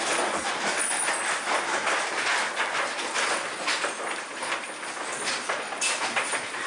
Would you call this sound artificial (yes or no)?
no